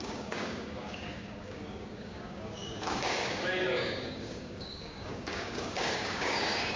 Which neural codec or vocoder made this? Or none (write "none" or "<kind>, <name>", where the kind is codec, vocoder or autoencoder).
codec, DAC